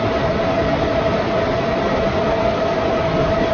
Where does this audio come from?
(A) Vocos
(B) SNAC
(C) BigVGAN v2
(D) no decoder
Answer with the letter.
D